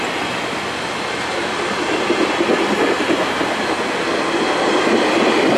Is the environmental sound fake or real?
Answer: real